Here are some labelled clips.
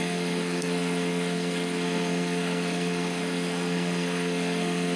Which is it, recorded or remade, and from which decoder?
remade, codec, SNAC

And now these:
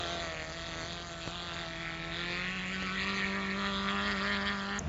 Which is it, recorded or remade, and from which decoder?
recorded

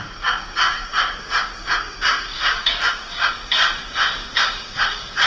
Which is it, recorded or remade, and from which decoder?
remade, codec, DAC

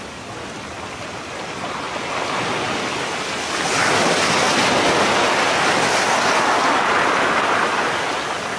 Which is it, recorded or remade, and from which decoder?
recorded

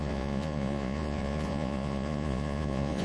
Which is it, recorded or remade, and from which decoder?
remade, vocoder, Vocos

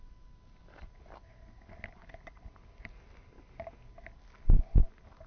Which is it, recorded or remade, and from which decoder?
recorded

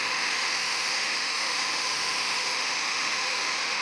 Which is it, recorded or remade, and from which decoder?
remade, autoencoder, DAC-VAE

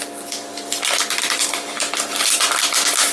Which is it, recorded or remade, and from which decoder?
recorded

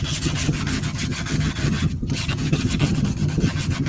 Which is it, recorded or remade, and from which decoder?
remade, vocoder, HiFi-GAN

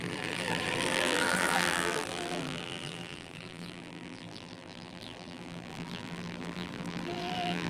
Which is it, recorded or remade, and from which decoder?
remade, vocoder, BigVGAN v2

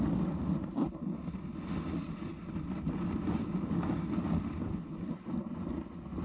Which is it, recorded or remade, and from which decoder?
recorded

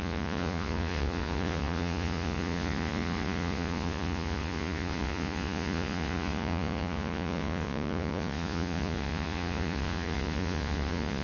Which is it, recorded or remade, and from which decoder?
remade, vocoder, Vocos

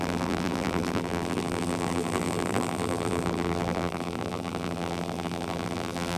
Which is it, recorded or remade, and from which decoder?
remade, vocoder, BigVGAN v2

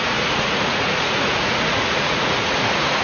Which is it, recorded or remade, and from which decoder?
remade, vocoder, Vocos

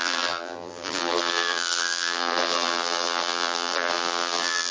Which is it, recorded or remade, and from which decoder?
remade, vocoder, BigVGAN v2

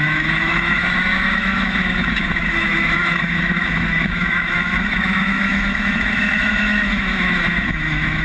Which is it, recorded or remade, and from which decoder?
remade, autoencoder, DAC-VAE